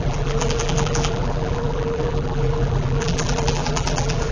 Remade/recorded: remade